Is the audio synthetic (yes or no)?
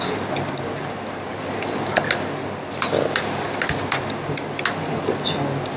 no